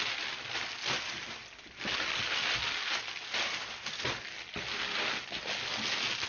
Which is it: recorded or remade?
recorded